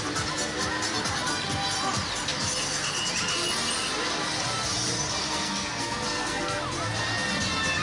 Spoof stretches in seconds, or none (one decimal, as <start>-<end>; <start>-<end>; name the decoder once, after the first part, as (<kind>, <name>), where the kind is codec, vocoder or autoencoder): 5.2-6.6 (codec, SNAC)